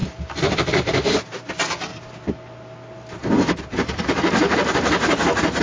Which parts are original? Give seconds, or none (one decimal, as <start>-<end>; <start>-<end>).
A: 1.5-3.7